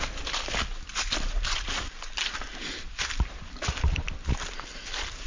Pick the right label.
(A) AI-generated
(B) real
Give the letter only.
A